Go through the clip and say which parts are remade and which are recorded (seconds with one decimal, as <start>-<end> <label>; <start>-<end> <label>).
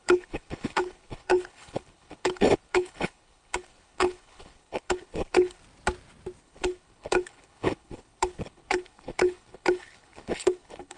0.0-5.6 remade; 5.6-6.4 recorded; 6.4-11.0 remade